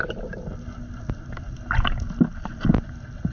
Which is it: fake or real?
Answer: real